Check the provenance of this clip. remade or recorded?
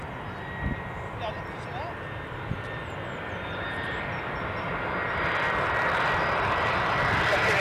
recorded